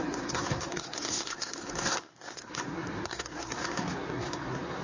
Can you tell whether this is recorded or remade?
remade